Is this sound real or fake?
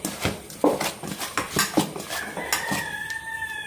real